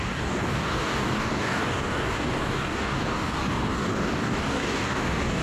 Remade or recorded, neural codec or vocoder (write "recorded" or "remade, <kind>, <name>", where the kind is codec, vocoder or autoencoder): remade, codec, DAC